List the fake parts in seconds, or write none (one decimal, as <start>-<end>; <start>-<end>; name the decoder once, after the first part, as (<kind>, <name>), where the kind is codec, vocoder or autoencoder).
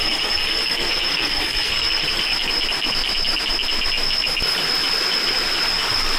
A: 0.0-2.3 (codec, SNAC)